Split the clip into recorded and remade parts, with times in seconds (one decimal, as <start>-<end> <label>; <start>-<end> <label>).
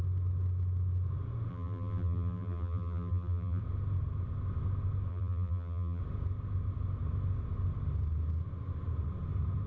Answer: 0.0-1.5 recorded; 1.5-3.6 remade; 3.6-5.1 recorded; 5.1-6.0 remade; 6.0-9.7 recorded